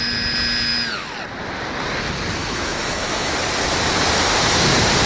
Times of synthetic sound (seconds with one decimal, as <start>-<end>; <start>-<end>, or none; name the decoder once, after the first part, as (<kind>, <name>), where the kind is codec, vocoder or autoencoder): 2.4-3.3 (autoencoder, DAC-VAE)